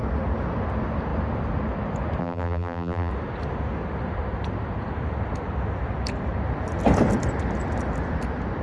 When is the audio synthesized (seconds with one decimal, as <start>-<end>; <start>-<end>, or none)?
2.2-3.1